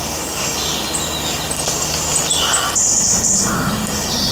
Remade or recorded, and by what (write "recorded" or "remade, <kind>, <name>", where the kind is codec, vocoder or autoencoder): recorded